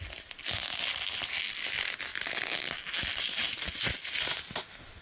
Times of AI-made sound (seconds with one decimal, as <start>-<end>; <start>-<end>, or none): none